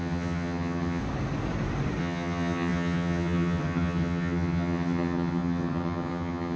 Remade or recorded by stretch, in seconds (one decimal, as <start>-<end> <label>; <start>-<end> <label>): 0.0-1.0 remade; 1.0-2.0 recorded; 2.0-6.6 remade